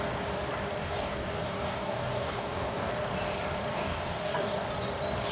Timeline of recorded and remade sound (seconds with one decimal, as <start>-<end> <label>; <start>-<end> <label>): 0.0-0.8 recorded; 0.8-2.9 remade; 2.9-3.7 recorded; 3.7-4.7 remade; 4.7-5.3 recorded